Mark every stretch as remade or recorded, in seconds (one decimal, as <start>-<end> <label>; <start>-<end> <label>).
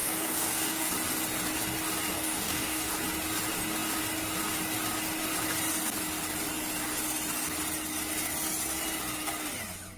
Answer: 0.0-0.9 remade; 0.9-2.1 recorded; 2.1-2.9 remade; 2.9-10.0 recorded